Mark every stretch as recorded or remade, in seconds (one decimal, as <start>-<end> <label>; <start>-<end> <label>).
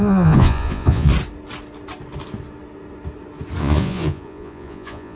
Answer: 0.0-1.1 remade; 1.1-3.6 recorded; 3.6-5.2 remade